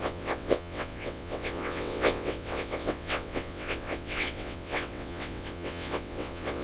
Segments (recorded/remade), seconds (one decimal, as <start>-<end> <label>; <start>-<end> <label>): 0.0-6.6 remade